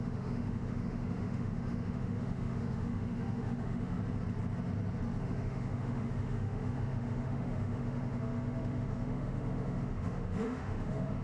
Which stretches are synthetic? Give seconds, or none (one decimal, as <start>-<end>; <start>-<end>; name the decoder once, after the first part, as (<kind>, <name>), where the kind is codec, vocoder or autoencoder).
0.0-4.0 (autoencoder, DAC-VAE); 5.2-11.2